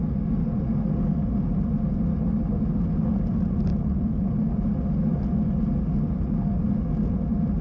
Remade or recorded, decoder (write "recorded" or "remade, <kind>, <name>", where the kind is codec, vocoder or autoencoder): recorded